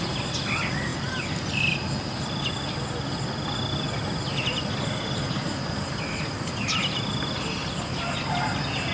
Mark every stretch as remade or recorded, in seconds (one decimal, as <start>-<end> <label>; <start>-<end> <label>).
0.0-8.9 recorded